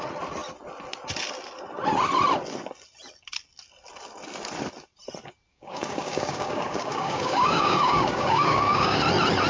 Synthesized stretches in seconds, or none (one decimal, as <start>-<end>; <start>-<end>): 5.5-9.0